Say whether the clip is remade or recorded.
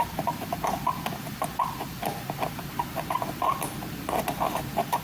recorded